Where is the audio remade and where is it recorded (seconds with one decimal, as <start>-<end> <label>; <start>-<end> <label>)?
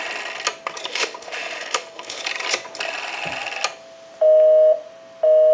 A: 0.0-0.9 recorded; 0.9-2.2 remade; 2.2-5.5 recorded